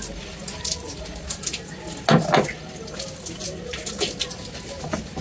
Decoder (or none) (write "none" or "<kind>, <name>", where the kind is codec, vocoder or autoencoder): none